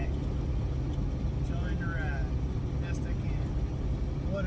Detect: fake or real real